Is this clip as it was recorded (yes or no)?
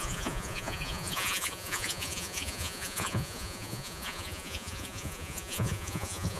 no